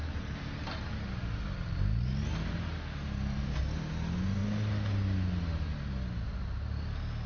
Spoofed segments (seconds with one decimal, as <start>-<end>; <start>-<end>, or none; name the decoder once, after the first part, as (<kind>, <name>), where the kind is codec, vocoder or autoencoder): none